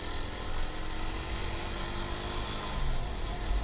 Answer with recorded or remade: recorded